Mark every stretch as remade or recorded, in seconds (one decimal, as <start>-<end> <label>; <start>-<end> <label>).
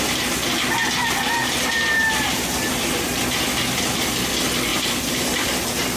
0.0-1.4 recorded; 1.4-2.7 remade; 2.7-4.7 recorded; 4.7-6.0 remade